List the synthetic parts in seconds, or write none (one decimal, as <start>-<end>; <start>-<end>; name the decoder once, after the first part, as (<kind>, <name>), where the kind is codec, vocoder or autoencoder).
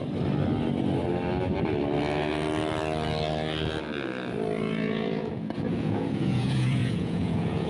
4.6-7.7 (vocoder, Vocos)